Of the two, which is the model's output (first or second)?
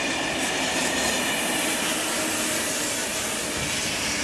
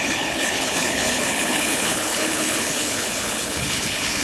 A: second